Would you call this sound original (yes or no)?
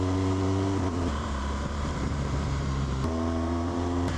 no